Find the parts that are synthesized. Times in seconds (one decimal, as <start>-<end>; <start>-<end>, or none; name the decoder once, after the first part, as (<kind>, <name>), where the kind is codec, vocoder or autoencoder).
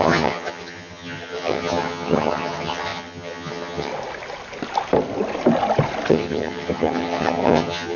0.0-3.9 (vocoder, HiFi-GAN); 6.1-8.0